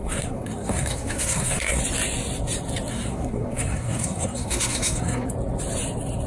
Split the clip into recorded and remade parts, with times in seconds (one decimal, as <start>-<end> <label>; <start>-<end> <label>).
0.0-1.8 remade; 1.8-2.9 recorded; 2.9-5.3 remade; 5.3-6.3 recorded